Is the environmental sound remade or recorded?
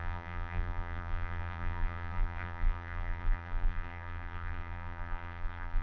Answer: remade